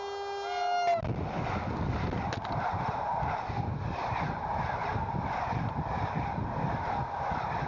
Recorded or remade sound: recorded